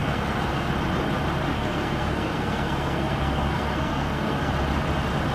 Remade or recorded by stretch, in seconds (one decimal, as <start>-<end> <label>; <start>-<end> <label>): 0.0-0.7 remade; 0.7-1.5 recorded; 1.5-4.5 remade; 4.5-5.3 recorded